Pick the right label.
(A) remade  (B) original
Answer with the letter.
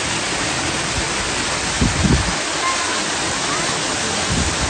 B